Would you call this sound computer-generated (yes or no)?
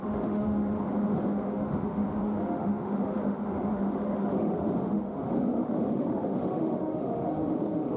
yes